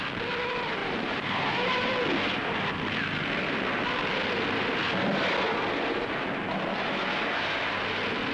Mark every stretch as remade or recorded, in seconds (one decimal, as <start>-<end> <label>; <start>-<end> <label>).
0.0-0.8 recorded; 0.8-1.9 remade; 1.9-8.3 recorded